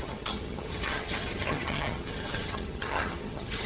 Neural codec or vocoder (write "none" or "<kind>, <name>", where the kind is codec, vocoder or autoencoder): vocoder, HiFi-GAN